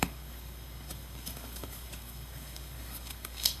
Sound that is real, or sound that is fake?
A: fake